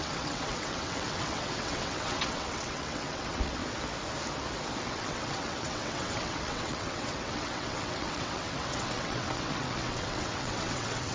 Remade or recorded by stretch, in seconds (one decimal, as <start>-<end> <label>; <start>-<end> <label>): 0.0-3.6 remade; 3.6-4.8 recorded; 4.8-11.1 remade